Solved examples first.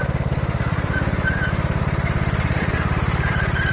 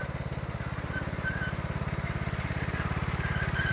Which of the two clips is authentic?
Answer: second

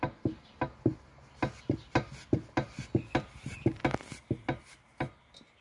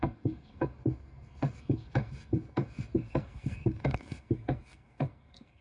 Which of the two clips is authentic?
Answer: first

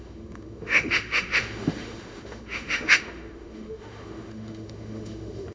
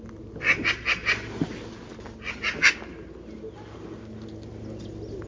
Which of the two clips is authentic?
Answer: second